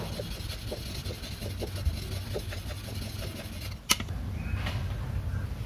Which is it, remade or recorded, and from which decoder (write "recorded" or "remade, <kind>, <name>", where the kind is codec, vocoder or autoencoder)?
recorded